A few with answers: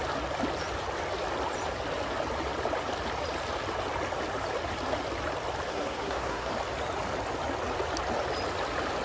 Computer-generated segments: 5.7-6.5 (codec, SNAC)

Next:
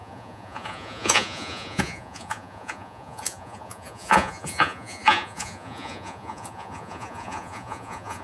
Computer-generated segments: 0.0-8.2 (vocoder, Vocos)